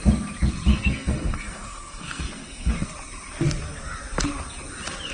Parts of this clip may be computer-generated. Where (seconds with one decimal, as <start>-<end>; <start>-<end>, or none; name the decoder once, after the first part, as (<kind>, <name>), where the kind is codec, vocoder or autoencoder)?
0.7-2.7 (codec, SNAC)